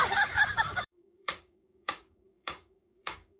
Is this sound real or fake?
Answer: fake